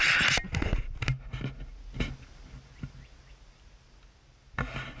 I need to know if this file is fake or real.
real